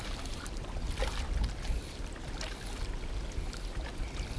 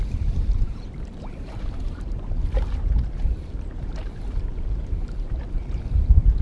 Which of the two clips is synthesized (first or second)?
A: second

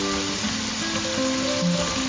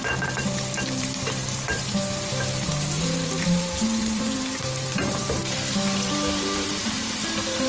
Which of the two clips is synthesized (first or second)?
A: second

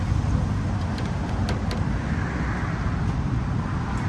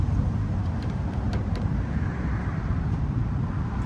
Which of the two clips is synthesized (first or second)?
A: second